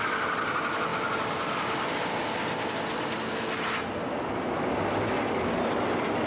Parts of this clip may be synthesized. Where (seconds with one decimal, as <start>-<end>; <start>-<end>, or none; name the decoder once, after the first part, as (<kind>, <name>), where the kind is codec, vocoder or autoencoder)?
none